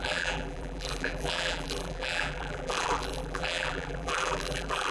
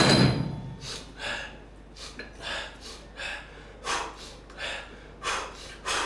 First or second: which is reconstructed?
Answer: first